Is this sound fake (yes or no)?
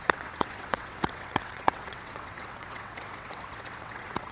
yes